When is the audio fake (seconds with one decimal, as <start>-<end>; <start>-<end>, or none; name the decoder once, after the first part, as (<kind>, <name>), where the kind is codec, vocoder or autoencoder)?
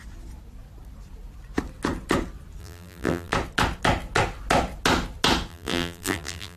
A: 2.6-3.3 (vocoder, BigVGAN v2); 5.5-6.6